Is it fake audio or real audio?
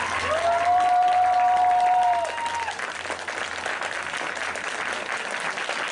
real